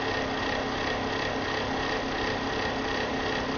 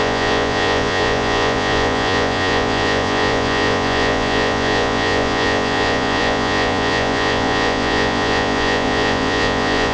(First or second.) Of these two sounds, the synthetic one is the second